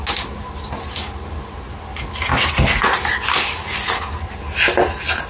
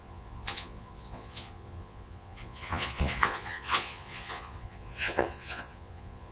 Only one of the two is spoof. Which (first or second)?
second